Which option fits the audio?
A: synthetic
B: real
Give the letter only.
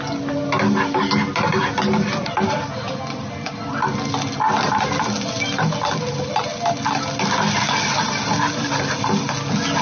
B